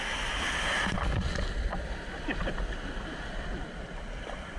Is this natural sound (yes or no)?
yes